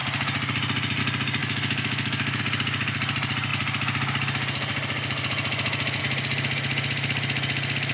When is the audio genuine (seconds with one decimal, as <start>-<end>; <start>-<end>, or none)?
0.0-1.4; 2.4-7.9